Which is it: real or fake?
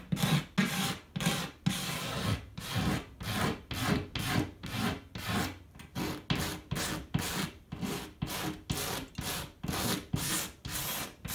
real